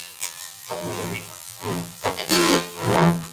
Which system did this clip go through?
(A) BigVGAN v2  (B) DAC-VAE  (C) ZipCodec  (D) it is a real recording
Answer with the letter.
A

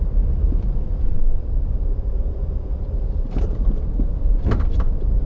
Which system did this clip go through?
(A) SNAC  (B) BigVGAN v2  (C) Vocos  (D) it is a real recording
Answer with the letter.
B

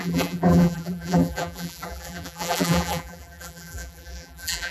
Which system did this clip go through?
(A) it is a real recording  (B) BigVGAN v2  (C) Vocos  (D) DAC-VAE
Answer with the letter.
B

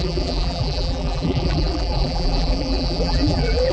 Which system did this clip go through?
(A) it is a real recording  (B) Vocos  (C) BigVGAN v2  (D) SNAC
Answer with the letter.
C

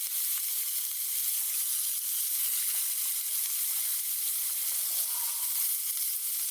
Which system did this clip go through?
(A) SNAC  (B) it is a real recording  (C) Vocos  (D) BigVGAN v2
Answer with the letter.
B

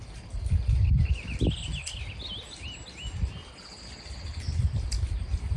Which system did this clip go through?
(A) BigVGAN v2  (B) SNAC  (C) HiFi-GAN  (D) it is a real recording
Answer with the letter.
D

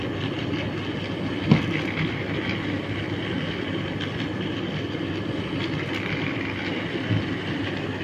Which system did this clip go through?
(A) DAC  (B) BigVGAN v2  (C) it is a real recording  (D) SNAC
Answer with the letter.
C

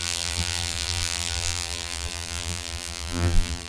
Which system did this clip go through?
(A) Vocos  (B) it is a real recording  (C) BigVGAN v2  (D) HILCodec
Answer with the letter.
C